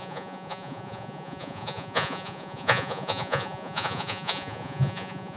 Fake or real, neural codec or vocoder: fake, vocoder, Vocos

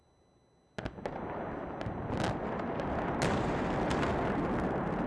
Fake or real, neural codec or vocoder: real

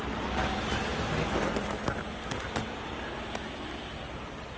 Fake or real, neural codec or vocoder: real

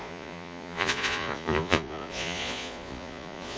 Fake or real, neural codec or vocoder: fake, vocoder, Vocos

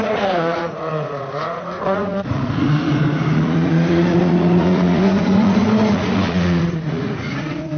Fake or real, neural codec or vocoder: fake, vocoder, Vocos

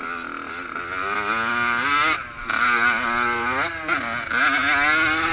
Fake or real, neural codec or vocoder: real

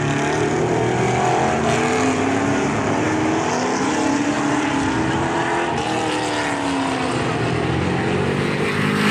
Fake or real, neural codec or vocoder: real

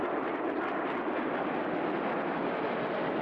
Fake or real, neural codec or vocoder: real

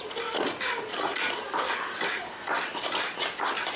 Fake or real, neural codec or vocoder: real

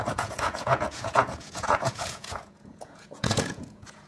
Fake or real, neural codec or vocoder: fake, vocoder, Vocos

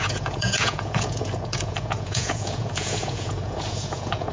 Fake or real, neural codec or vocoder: fake, vocoder, Vocos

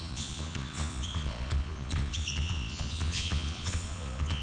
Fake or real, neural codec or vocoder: fake, vocoder, Vocos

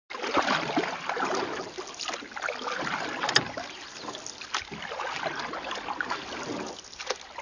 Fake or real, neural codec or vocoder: real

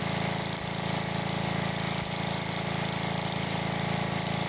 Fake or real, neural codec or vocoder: real